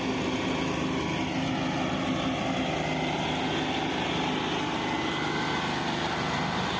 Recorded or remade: recorded